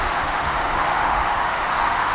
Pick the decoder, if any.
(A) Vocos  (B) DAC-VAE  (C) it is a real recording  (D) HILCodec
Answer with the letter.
B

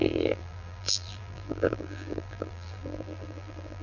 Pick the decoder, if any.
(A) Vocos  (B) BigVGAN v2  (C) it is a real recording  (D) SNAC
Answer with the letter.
B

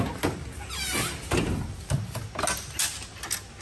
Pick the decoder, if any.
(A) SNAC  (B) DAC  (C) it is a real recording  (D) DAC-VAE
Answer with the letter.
C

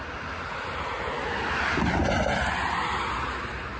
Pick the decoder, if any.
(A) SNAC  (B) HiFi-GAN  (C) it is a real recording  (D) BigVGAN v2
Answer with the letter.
C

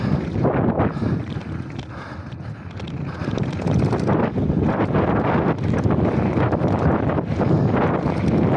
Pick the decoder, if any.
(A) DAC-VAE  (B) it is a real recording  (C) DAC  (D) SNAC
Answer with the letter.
B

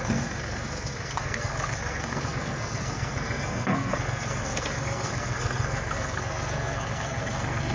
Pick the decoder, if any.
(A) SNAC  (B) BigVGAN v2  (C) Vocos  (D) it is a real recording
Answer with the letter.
A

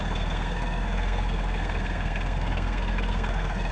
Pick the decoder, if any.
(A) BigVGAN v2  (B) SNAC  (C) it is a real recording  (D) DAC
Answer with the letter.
B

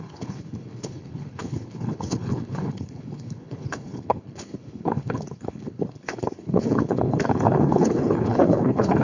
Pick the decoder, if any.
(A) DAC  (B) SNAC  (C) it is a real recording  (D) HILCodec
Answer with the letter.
D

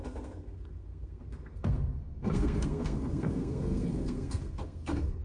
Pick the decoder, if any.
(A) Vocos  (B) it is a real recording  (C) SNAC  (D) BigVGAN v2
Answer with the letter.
C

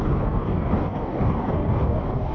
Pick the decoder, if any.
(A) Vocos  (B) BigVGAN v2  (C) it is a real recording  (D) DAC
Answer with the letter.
D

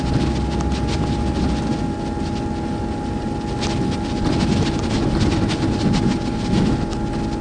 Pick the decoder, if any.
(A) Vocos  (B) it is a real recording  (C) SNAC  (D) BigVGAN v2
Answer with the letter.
B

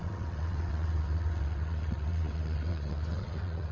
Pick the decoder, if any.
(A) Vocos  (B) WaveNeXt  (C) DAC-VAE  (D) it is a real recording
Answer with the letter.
B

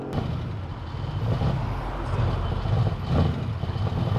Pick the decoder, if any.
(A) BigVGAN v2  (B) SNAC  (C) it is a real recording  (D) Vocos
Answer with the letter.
C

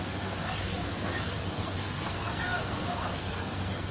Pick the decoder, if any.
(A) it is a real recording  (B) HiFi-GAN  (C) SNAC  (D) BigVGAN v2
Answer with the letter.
C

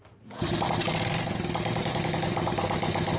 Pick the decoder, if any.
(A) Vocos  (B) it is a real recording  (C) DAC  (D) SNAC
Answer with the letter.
B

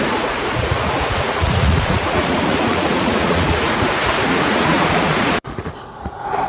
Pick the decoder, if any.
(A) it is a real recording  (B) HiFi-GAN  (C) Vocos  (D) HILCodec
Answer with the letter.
C